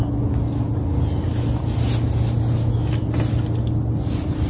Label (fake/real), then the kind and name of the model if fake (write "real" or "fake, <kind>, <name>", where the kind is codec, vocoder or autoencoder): real